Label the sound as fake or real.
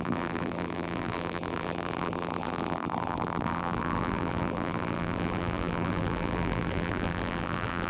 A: fake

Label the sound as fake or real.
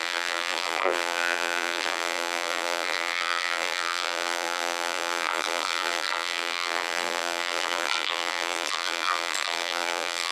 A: fake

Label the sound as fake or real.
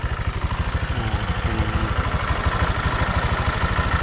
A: real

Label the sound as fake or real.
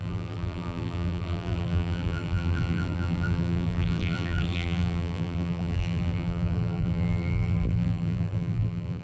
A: fake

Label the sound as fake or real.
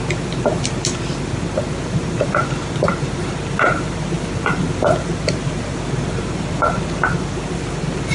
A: fake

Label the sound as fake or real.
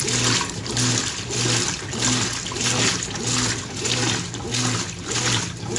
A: real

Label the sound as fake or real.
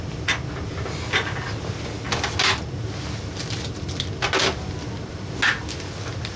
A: real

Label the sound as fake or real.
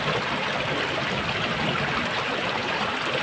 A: fake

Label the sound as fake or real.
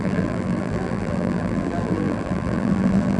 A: fake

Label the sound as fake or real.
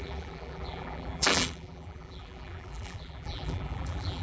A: fake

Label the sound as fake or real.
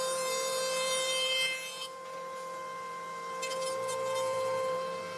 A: fake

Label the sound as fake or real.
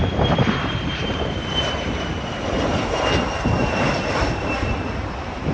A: fake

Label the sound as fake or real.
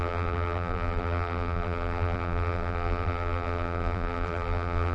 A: fake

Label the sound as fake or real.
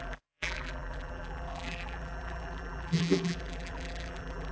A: fake